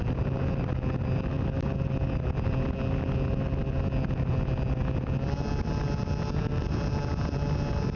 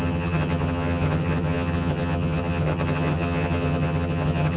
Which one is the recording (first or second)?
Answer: first